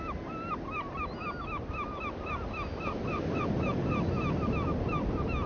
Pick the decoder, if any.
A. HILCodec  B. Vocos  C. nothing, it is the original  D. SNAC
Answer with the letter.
C